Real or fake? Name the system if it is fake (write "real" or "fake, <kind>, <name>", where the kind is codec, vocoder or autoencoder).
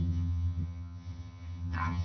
fake, vocoder, HiFi-GAN